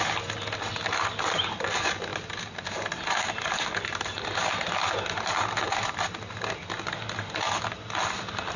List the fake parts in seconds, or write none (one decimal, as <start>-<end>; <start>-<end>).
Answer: none